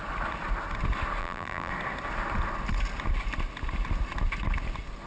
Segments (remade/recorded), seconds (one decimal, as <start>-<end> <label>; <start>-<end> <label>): 0.0-1.2 recorded; 1.2-1.7 remade; 1.7-5.1 recorded